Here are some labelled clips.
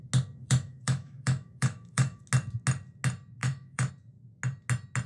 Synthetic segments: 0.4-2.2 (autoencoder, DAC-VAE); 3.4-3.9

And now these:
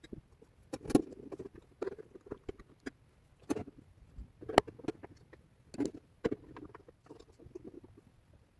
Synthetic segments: none